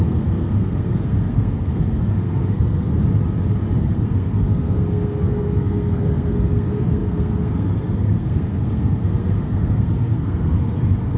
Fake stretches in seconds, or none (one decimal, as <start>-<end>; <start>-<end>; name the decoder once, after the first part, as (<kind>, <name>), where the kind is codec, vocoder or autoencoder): 0.0-3.0 (codec, SNAC); 3.8-11.2

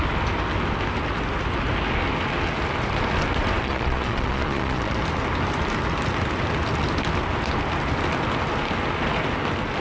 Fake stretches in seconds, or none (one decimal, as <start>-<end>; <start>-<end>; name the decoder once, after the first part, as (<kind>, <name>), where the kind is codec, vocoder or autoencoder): 3.6-5.0 (vocoder, Vocos)

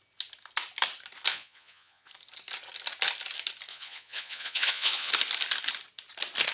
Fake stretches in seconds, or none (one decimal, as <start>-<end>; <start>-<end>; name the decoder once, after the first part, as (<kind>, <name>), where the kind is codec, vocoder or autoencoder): 1.3-2.1 (vocoder, Vocos); 3.7-5.1

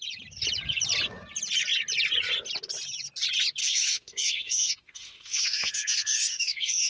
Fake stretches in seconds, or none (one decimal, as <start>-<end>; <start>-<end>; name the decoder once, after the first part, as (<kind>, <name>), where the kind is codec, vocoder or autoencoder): 3.6-6.9 (autoencoder, DAC-VAE)

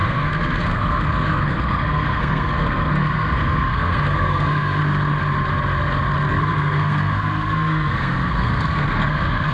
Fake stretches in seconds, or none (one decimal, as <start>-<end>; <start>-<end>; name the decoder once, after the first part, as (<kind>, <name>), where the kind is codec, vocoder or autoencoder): 0.0-4.8 (codec, SNAC); 6.3-9.5

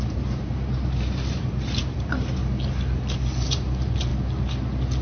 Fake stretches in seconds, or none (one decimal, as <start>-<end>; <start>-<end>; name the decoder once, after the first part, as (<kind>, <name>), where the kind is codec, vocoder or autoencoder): 0.0-2.4 (vocoder, BigVGAN v2); 3.5-4.1

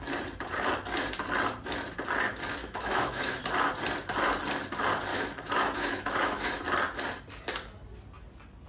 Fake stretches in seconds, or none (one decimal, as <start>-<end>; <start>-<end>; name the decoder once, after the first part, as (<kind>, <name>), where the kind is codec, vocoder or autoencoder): 2.6-3.4 (autoencoder, DAC-VAE); 5.1-6.6